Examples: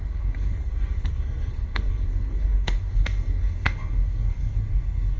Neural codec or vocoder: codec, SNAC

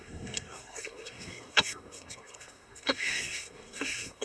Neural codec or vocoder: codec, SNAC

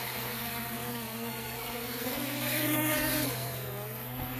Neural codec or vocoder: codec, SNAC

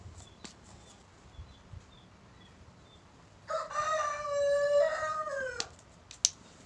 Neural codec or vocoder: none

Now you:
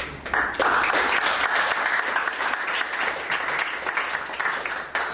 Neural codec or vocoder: none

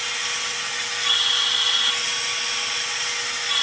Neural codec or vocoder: none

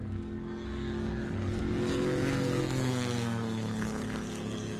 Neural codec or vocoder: codec, SNAC